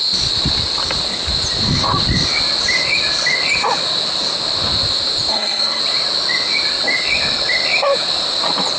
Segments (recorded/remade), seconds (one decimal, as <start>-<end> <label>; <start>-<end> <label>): 0.0-5.3 recorded; 5.3-5.8 remade; 5.8-8.8 recorded